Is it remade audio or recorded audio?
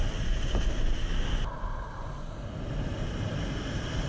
recorded